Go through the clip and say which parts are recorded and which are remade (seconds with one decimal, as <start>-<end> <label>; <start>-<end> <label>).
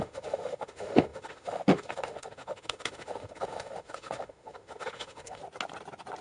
0.0-5.4 remade; 5.4-6.2 recorded